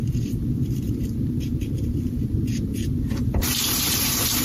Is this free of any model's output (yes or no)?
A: no